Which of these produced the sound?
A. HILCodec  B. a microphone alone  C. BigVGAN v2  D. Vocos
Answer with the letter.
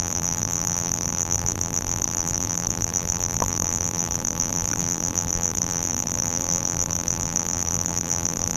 C